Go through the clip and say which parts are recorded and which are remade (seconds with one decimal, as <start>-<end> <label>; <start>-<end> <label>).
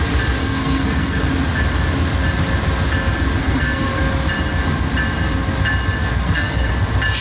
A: 0.0-0.4 recorded; 0.4-1.3 remade; 1.3-3.4 recorded; 3.4-4.0 remade; 4.0-6.0 recorded; 6.0-6.7 remade; 6.7-7.2 recorded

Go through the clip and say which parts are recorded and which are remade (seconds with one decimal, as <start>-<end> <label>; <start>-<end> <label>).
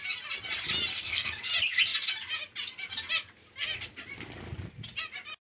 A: 0.0-0.9 recorded; 0.9-1.5 remade; 1.5-5.5 recorded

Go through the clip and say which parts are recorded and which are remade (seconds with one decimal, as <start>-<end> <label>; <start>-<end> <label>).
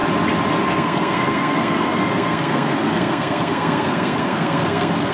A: 0.0-0.6 recorded; 0.6-5.1 remade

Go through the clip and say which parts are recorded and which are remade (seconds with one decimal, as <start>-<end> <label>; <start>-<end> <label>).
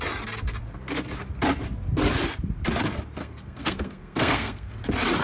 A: 0.0-3.2 recorded; 3.2-4.7 remade; 4.7-5.2 recorded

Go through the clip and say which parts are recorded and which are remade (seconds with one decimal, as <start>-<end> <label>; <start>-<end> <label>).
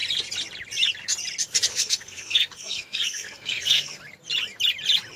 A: 0.0-1.7 recorded; 1.7-4.0 remade; 4.0-5.2 recorded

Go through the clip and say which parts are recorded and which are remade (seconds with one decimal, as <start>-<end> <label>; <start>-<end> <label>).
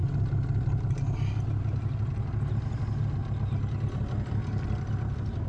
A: 0.0-5.5 recorded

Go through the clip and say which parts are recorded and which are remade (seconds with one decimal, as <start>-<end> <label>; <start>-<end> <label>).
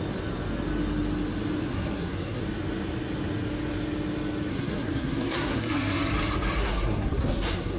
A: 0.0-1.7 recorded; 1.7-2.4 remade; 2.4-4.5 recorded; 4.5-6.1 remade; 6.1-6.6 recorded; 6.6-7.8 remade